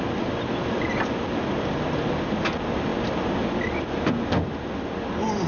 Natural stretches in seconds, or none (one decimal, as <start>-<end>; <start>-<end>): 0.0-5.5